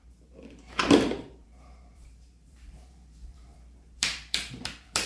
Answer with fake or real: fake